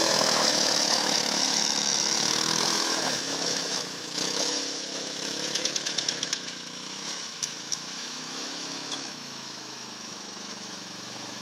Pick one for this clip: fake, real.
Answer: fake